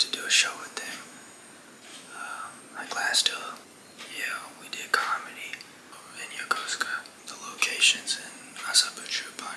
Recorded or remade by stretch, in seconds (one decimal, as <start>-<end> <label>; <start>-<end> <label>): 0.0-0.6 recorded; 0.6-1.4 remade; 1.4-1.9 recorded; 1.9-2.6 remade; 2.6-9.6 recorded